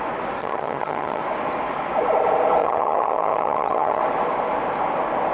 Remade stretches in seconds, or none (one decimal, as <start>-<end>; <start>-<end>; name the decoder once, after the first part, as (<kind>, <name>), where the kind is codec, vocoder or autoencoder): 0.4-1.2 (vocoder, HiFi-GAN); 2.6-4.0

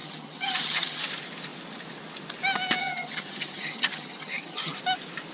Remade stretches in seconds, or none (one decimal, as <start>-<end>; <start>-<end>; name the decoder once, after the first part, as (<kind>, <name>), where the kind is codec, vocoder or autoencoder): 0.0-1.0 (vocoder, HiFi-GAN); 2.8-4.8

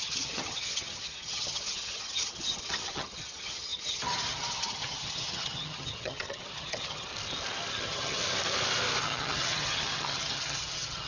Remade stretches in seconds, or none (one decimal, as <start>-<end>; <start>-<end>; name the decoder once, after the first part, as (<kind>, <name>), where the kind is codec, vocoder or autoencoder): 0.0-7.1 (vocoder, HiFi-GAN); 7.7-8.2; 9.0-11.1

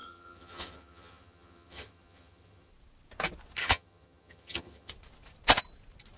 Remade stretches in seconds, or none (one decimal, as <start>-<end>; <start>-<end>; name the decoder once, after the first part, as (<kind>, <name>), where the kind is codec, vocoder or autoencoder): 0.0-2.7 (vocoder, HiFi-GAN); 3.6-4.9

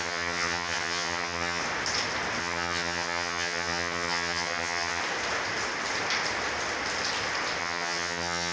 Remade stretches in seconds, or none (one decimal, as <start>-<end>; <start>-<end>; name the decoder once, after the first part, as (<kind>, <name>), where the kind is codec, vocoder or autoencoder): 0.0-1.6 (vocoder, HiFi-GAN); 2.4-5.0; 7.6-8.5

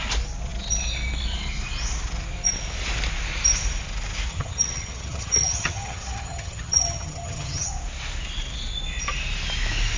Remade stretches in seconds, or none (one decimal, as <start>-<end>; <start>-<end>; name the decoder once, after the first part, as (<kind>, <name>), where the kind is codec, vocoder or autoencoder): 4.3-7.7 (vocoder, HiFi-GAN)

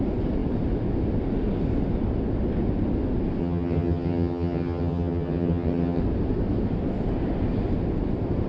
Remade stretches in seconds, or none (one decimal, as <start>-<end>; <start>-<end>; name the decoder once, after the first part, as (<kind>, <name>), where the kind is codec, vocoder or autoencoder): 3.4-6.0 (vocoder, HiFi-GAN)